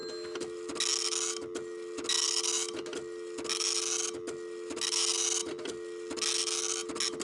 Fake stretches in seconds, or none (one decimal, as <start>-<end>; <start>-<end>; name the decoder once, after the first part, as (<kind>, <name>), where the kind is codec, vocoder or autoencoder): none